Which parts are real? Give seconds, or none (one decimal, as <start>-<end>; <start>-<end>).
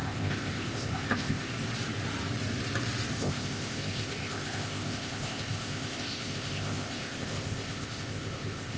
1.5-3.2